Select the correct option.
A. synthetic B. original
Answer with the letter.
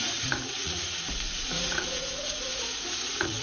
A